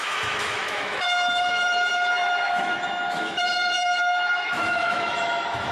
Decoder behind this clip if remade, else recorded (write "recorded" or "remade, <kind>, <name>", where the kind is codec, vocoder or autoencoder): remade, autoencoder, DAC-VAE